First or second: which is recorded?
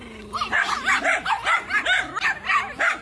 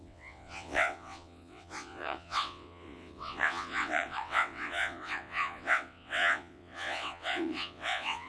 first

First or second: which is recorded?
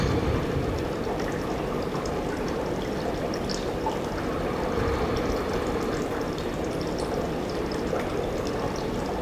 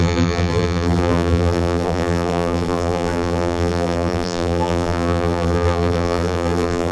first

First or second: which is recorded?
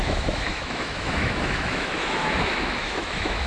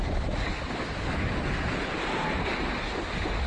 second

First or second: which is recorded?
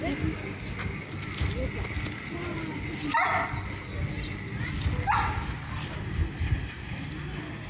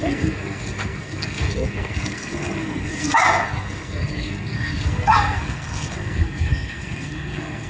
first